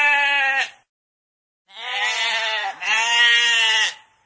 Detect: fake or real real